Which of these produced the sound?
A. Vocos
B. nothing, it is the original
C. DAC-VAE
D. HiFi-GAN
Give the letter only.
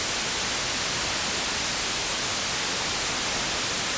B